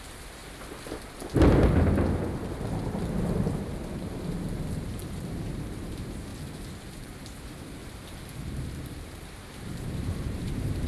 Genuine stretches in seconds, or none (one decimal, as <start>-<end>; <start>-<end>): 0.4-4.8; 6.3-6.9; 7.8-8.4